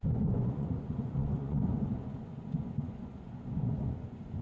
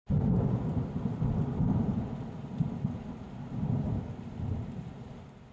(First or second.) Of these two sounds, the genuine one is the second